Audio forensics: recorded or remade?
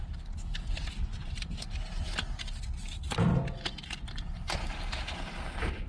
recorded